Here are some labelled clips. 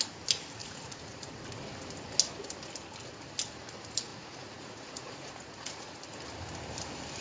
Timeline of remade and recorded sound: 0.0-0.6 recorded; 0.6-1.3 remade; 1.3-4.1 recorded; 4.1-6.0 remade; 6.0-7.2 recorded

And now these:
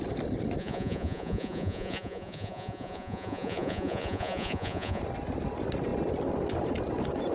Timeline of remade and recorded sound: 0.0-0.6 recorded; 0.6-5.0 remade; 5.0-7.3 recorded

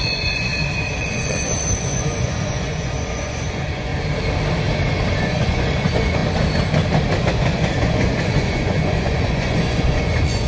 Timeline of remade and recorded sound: 0.0-0.5 remade; 0.5-1.0 recorded; 1.0-3.9 remade; 3.9-5.2 recorded; 5.2-6.2 remade; 6.2-7.2 recorded; 7.2-10.5 remade

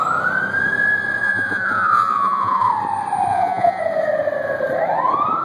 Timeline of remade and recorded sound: 0.0-1.2 recorded; 1.2-2.7 remade; 2.7-3.3 recorded; 3.3-3.8 remade; 3.8-5.4 recorded

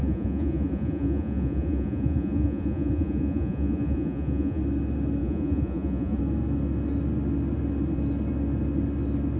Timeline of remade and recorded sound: 0.0-4.6 remade; 4.6-5.2 recorded; 5.2-6.2 remade; 6.2-9.4 recorded

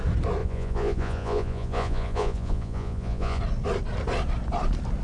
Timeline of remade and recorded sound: 0.0-0.4 recorded; 0.4-3.4 remade; 3.4-5.0 recorded

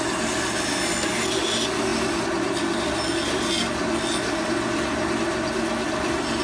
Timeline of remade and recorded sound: 0.0-6.4 recorded

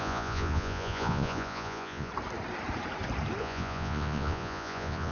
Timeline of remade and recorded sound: 0.0-2.1 remade; 2.1-3.4 recorded; 3.4-5.1 remade